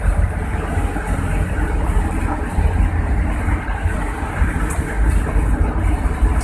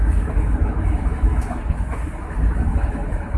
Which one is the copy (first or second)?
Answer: second